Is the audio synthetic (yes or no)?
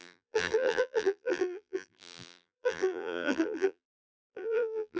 yes